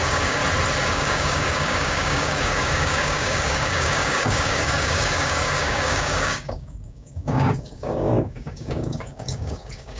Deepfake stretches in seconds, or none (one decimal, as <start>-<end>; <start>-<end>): 0.0-0.4; 0.9-10.0